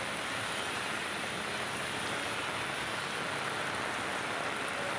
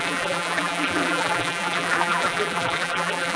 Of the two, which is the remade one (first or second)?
second